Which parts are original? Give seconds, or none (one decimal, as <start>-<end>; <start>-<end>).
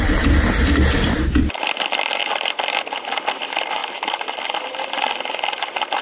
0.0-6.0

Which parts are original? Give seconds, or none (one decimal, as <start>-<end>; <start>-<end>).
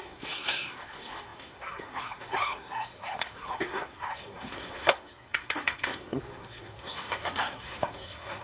none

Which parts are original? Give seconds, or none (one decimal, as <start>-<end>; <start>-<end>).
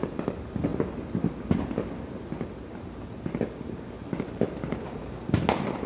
0.0-5.9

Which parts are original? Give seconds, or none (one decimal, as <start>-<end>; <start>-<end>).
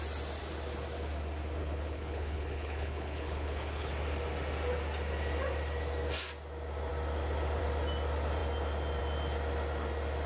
0.0-1.6; 3.9-10.3